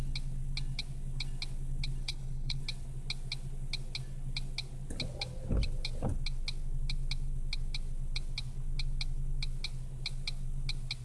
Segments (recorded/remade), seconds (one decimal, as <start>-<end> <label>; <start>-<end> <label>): 0.0-2.0 recorded; 2.0-2.6 remade; 2.6-11.0 recorded